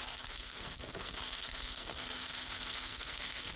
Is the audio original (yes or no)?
no